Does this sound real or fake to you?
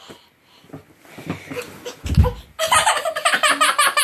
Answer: real